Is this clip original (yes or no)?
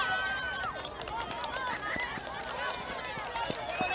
yes